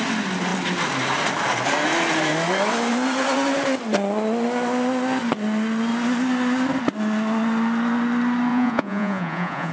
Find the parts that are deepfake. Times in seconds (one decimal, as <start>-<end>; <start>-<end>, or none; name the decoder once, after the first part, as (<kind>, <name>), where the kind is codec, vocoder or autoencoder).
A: 8.5-9.7 (vocoder, Vocos)

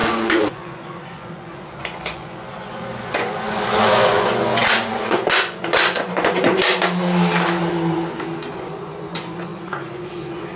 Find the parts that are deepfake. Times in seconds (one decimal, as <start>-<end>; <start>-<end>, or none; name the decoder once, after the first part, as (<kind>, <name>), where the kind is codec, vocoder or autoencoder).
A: 0.0-6.5 (vocoder, Vocos); 7.6-10.6